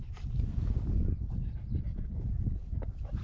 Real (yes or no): yes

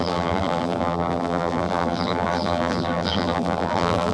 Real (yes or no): no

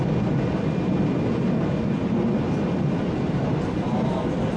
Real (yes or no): yes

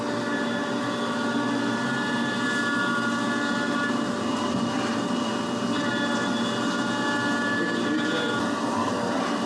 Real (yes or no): yes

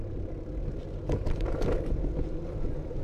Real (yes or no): yes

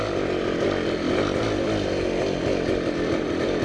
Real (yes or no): yes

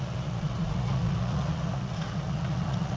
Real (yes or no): no